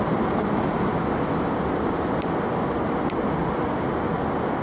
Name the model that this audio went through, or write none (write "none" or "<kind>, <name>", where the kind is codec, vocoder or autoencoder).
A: none